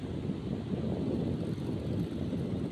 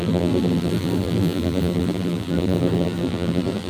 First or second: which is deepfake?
second